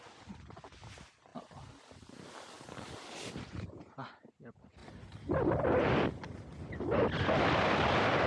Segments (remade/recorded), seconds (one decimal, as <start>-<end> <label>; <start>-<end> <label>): 0.0-8.3 recorded